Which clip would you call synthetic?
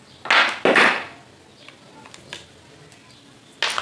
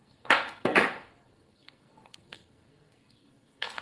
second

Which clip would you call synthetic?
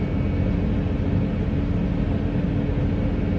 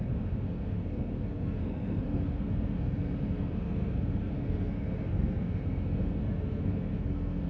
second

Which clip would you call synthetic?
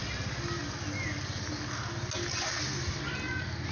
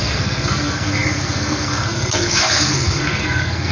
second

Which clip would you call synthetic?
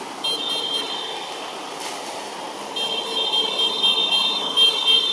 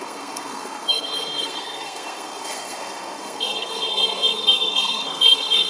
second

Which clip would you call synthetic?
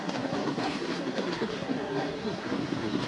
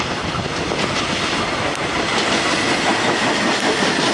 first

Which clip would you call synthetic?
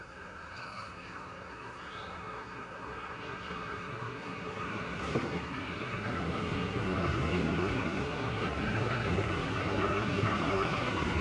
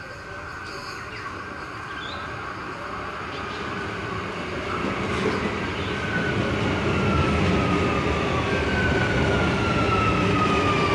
first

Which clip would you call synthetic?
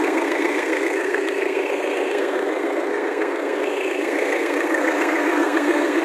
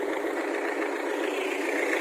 first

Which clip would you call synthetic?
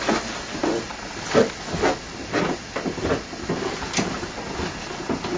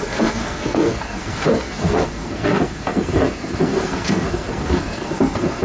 second